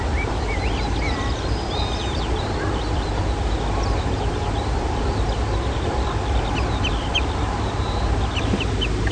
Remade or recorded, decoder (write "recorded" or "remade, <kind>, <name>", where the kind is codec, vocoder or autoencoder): remade, vocoder, BigVGAN v2